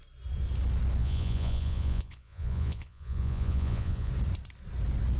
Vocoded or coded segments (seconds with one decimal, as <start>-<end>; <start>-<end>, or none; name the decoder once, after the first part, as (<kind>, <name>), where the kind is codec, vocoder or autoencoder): 1.0-4.1 (vocoder, Vocos)